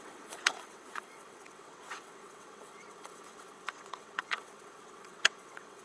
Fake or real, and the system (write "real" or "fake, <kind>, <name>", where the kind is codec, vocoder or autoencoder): fake, vocoder, WaveNeXt